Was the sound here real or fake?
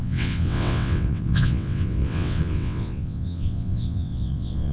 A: fake